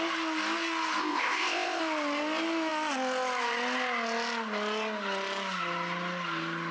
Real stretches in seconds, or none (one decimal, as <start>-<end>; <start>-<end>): 0.0-1.0; 1.8-6.7